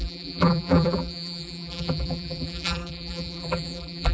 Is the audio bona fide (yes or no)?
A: no